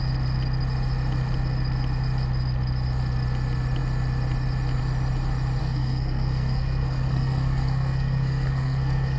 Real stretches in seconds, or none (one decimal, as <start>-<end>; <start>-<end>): 0.0-5.6